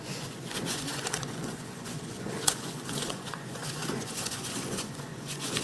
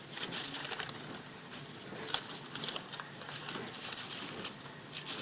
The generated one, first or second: first